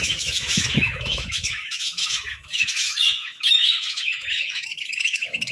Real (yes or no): no